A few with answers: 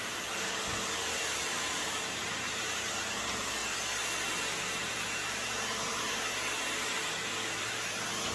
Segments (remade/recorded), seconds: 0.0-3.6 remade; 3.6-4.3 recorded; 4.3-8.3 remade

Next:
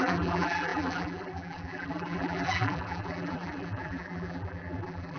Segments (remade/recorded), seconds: 0.0-5.2 remade

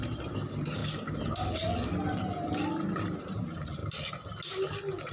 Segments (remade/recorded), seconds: 0.0-0.8 remade; 0.8-3.0 recorded; 3.0-3.8 remade; 3.8-5.1 recorded

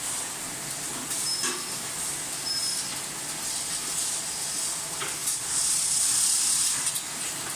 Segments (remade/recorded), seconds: 0.0-7.6 recorded

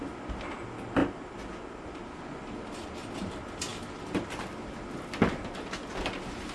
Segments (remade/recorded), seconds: 0.0-1.0 recorded; 1.0-2.3 remade; 2.3-6.5 recorded

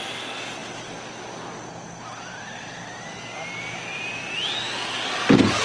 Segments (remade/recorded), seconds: 0.0-5.6 recorded